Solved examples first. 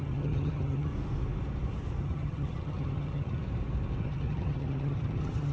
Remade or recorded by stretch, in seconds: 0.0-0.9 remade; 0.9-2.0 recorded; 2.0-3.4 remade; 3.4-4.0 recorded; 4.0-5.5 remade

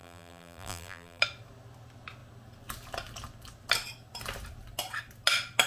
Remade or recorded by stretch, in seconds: 0.0-1.2 remade; 1.2-5.7 recorded